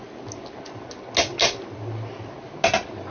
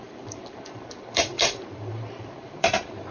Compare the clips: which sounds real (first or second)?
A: first